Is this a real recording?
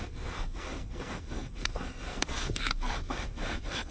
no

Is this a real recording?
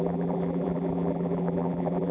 no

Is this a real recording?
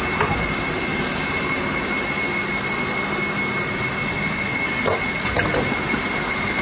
yes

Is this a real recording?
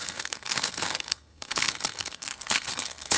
no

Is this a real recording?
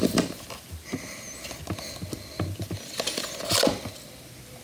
yes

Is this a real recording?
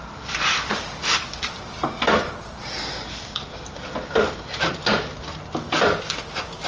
yes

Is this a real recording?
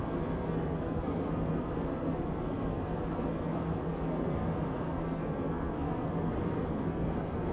no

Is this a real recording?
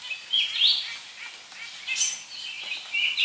yes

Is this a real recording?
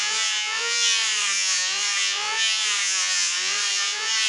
no